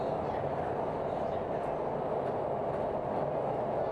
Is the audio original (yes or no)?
yes